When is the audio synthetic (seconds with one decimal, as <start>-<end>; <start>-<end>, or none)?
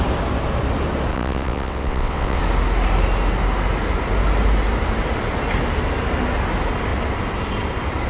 1.1-2.4